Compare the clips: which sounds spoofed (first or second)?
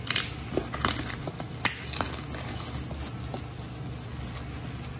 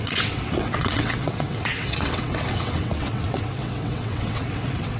second